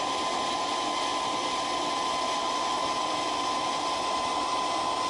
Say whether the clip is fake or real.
real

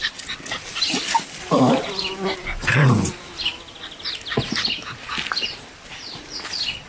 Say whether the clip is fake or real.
real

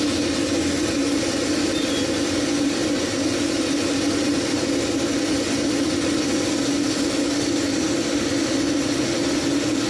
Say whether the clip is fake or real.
real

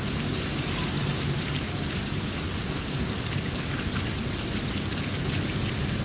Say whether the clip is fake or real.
real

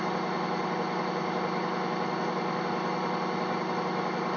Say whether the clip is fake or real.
real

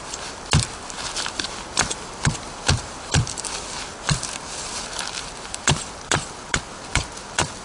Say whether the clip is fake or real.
real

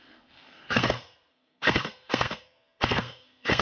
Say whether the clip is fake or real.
fake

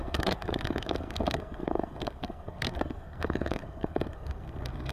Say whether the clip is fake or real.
fake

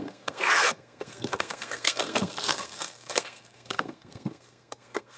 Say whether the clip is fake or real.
fake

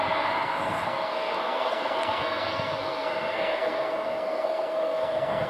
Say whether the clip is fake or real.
fake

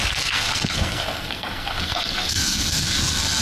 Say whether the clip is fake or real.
fake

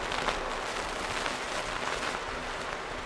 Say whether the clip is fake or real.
real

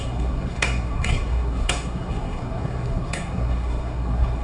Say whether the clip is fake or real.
fake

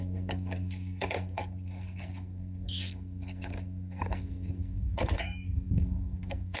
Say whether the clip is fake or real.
fake